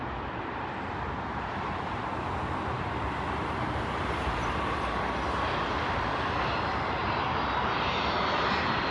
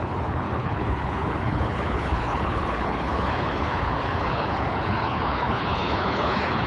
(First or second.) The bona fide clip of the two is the first